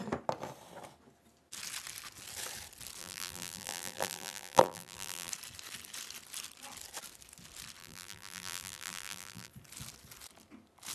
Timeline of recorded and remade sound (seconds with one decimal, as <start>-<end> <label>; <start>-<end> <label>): 0.0-3.0 recorded; 3.0-5.3 remade; 5.3-7.8 recorded; 7.8-9.5 remade; 9.5-10.9 recorded